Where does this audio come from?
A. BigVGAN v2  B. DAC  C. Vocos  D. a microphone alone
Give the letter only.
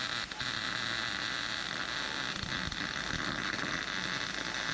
D